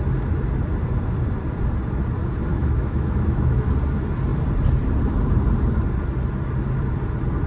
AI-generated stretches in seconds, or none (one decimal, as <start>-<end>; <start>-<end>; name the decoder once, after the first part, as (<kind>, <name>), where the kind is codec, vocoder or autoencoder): 2.5-3.7 (autoencoder, DAC-VAE)